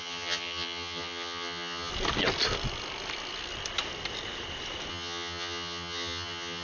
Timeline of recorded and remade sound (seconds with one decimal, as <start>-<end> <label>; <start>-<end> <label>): 0.0-1.9 remade; 1.9-4.9 recorded; 4.9-6.6 remade